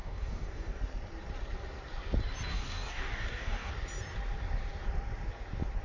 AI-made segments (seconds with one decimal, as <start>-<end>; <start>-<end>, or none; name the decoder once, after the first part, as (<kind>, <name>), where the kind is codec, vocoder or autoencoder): 0.0-0.8 (codec, DAC); 2.5-3.7